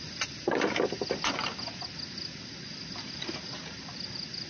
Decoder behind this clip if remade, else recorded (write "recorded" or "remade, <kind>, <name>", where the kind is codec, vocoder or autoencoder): recorded